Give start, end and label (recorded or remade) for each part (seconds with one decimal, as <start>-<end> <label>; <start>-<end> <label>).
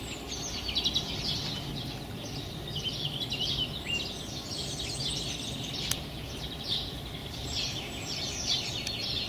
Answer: 0.0-7.2 recorded; 7.2-8.6 remade; 8.6-9.3 recorded